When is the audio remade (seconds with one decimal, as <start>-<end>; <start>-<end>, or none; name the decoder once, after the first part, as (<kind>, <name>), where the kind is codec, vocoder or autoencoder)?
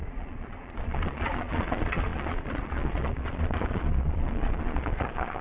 0.0-5.4 (vocoder, Vocos)